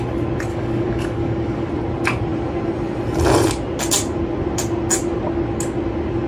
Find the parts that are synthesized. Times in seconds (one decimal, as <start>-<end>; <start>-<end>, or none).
0.5-1.7